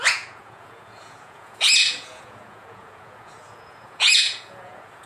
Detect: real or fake fake